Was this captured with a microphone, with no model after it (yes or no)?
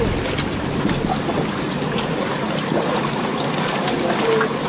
yes